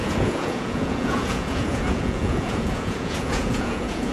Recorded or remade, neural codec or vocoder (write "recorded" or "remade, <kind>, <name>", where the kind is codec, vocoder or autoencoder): remade, vocoder, Vocos